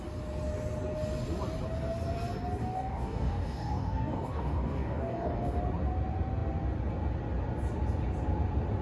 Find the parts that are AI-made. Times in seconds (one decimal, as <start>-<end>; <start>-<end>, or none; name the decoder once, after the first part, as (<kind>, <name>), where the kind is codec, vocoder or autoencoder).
2.6-5.6 (codec, DAC)